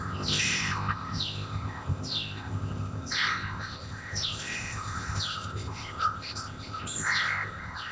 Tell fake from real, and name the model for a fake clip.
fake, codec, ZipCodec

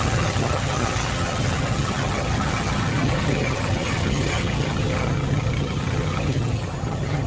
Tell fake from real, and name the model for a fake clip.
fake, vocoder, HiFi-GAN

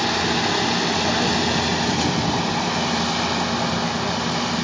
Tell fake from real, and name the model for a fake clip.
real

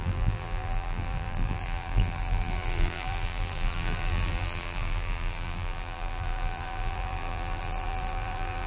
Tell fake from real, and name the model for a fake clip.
fake, vocoder, BigVGAN v2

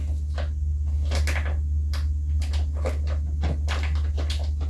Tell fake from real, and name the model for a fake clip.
real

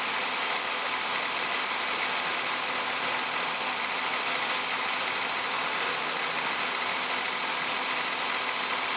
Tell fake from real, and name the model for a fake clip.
real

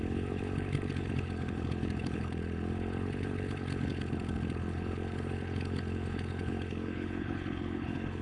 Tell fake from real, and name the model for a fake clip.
fake, codec, HILCodec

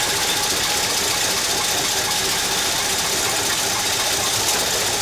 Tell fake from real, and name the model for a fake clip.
real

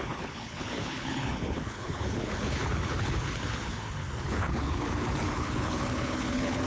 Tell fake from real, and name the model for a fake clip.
fake, codec, HILCodec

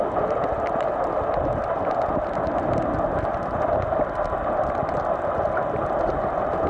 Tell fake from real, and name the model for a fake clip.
real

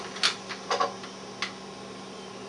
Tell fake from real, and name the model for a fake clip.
real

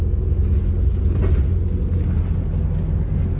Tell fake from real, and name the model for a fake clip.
real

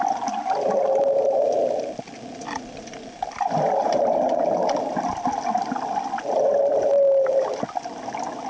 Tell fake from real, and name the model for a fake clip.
real